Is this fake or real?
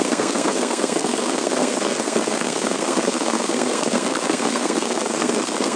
fake